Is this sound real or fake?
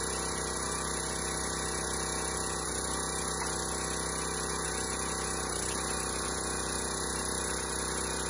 real